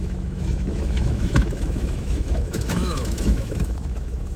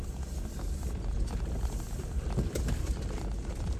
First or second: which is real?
second